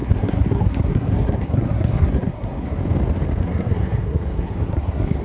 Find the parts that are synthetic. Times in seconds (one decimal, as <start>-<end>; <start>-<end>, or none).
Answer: 0.0-2.8; 3.4-5.2